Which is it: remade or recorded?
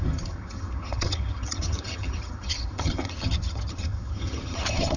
remade